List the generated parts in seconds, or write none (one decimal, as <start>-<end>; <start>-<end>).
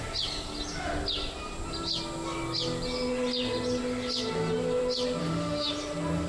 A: 5.2-5.7